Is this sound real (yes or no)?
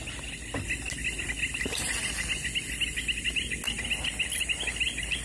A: yes